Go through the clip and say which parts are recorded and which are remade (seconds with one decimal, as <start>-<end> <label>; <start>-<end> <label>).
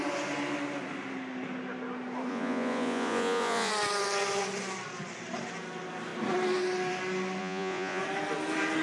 0.0-2.3 recorded; 2.3-3.7 remade; 3.7-7.4 recorded; 7.4-8.0 remade; 8.0-8.8 recorded